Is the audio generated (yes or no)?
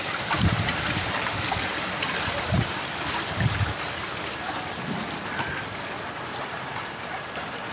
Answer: no